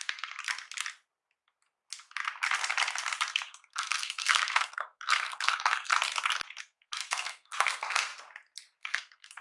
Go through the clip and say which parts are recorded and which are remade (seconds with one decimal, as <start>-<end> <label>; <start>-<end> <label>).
0.0-0.4 remade; 0.4-3.3 recorded; 3.3-5.9 remade; 5.9-6.6 recorded; 6.6-8.1 remade; 8.1-8.8 recorded; 8.8-9.4 remade